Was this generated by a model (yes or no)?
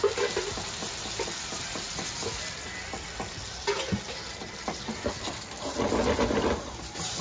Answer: no